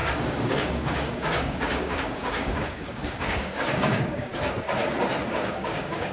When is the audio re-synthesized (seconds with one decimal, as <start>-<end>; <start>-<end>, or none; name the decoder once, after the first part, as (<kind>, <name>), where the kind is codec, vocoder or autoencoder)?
0.0-4.3 (codec, DAC); 5.3-6.1